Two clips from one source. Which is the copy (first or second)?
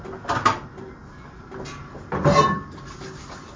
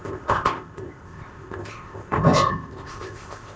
second